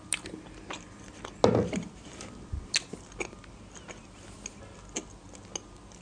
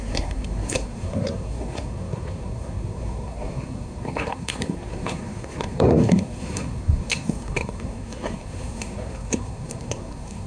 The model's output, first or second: second